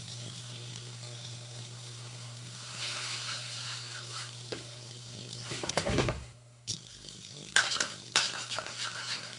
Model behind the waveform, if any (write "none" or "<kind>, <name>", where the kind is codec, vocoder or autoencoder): codec, SNAC